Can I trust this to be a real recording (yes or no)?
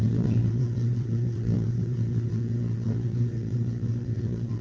no